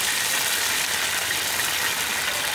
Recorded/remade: recorded